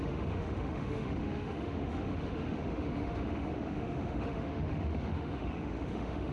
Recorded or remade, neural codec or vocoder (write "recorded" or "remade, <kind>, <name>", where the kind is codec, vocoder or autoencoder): remade, autoencoder, DAC-VAE